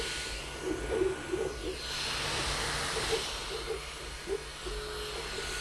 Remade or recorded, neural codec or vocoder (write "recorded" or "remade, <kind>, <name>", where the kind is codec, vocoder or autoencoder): recorded